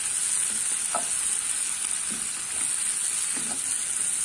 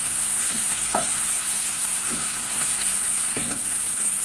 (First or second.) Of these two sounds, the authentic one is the first